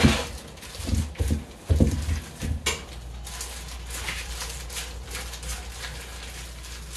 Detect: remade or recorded recorded